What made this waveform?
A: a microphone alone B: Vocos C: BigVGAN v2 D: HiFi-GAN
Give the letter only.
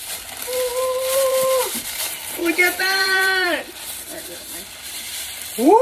C